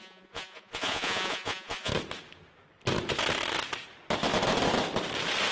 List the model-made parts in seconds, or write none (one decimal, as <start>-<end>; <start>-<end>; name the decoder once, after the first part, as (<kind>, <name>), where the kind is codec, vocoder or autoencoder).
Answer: 0.0-1.9 (vocoder, Vocos)

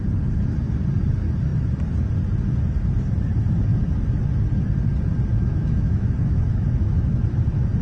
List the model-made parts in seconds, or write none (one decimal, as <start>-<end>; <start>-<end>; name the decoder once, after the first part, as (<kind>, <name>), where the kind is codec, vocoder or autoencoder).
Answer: 5.3-7.2 (autoencoder, DAC-VAE)